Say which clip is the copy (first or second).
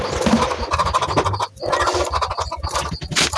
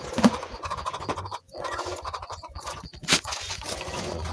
second